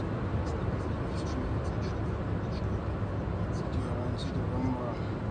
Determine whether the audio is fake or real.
real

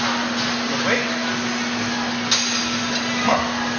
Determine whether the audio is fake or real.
real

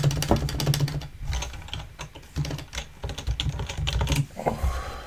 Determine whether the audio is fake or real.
real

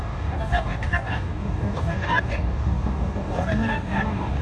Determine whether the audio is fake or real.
fake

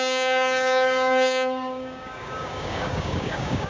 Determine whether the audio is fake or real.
fake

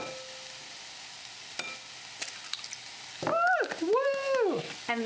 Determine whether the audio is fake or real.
real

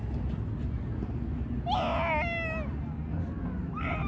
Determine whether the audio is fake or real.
real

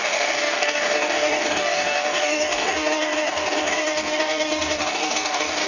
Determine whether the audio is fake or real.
fake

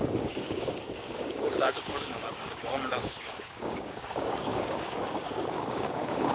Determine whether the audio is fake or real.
fake